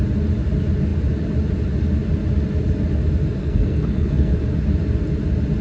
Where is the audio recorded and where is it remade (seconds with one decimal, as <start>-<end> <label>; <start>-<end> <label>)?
0.0-3.4 recorded; 3.4-4.4 remade; 4.4-5.6 recorded